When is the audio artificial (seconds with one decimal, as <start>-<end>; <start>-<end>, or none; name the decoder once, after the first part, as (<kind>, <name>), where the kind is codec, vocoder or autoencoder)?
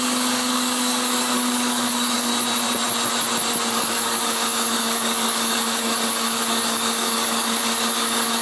0.0-2.3 (codec, DAC); 3.7-8.4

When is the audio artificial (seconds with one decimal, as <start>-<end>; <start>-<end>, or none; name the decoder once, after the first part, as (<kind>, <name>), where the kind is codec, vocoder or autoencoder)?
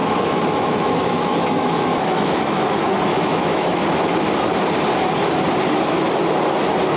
0.0-3.8 (autoencoder, DAC-VAE)